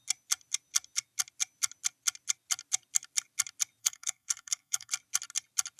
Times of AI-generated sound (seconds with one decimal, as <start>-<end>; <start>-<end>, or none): 3.8-4.9